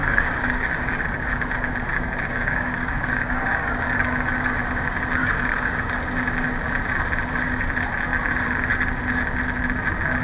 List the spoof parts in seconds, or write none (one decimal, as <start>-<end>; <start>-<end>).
0.0-1.0; 1.9-3.7; 5.2-5.9